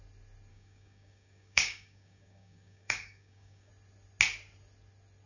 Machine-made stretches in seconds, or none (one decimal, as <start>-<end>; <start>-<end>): 0.5-3.7